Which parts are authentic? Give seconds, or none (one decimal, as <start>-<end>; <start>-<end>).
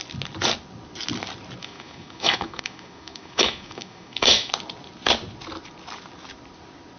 0.0-1.6; 4.5-7.0